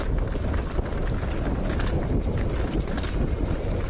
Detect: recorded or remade recorded